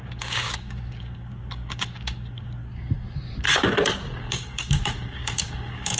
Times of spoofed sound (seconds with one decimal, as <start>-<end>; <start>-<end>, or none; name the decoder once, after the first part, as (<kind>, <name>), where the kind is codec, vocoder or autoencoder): 0.0-2.6 (codec, DAC); 4.3-6.0